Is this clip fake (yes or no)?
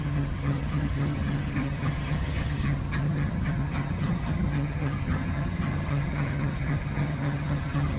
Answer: yes